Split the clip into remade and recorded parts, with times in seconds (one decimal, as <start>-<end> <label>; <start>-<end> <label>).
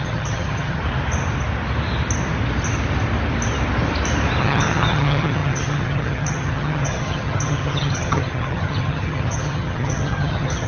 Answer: 0.0-0.8 remade; 0.8-4.4 recorded; 4.4-10.7 remade